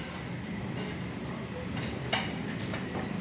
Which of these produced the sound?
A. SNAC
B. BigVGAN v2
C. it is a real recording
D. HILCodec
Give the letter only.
B